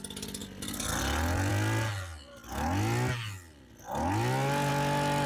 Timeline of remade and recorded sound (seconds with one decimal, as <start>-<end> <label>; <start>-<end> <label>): 0.0-5.3 recorded